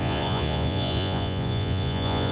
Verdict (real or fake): fake